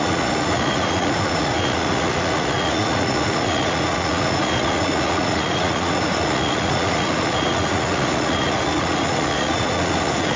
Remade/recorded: remade